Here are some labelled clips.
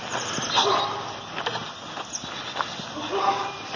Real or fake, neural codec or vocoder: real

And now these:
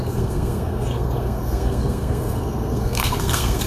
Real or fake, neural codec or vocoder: fake, codec, SNAC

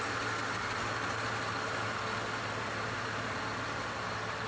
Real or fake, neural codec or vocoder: real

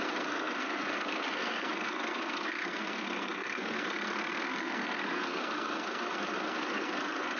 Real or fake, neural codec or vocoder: fake, codec, SNAC